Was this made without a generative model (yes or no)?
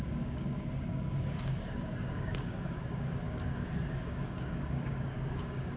no